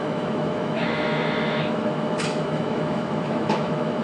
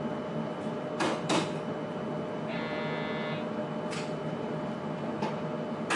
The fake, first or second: first